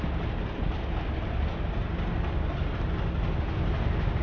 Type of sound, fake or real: real